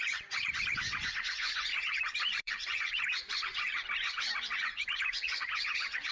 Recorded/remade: remade